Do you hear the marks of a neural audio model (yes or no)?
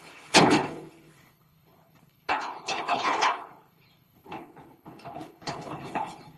yes